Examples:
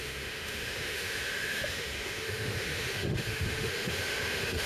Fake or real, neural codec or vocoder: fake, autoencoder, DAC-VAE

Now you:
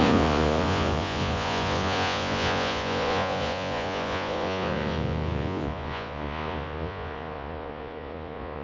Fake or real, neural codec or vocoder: fake, vocoder, Vocos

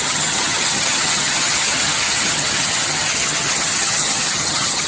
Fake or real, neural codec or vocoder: fake, vocoder, HiFi-GAN